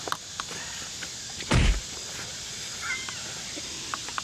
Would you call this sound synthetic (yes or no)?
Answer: no